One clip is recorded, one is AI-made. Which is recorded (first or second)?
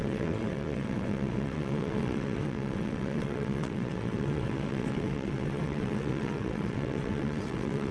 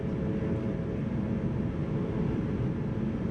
second